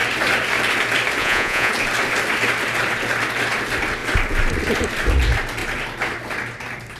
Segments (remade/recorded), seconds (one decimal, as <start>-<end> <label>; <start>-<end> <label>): 0.0-1.2 recorded; 1.2-1.7 remade; 1.7-7.0 recorded